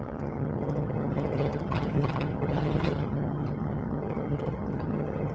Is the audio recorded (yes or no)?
no